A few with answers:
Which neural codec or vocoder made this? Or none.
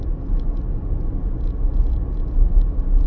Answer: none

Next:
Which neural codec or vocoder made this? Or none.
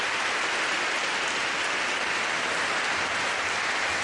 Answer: none